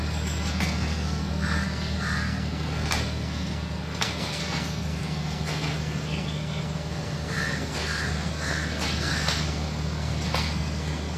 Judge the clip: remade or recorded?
remade